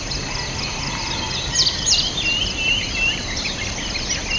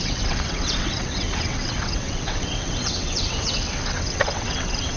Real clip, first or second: first